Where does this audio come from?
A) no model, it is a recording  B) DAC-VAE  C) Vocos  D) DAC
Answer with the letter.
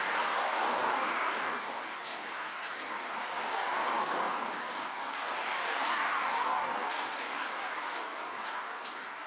D